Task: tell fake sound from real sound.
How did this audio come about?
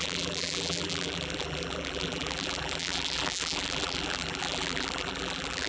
fake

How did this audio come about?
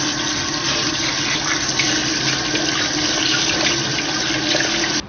real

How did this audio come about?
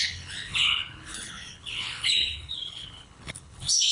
fake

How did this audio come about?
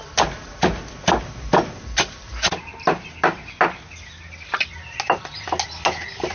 real